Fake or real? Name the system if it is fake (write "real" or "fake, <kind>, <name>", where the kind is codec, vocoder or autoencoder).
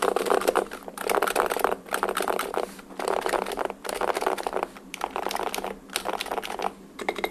real